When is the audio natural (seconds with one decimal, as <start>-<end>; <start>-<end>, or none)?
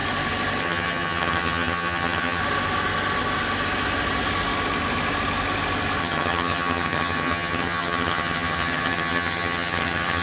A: 0.0-0.6; 2.4-6.0